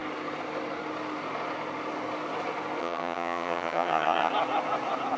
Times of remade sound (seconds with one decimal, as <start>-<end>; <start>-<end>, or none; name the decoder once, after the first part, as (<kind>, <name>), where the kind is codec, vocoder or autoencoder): 2.8-4.3 (vocoder, HiFi-GAN)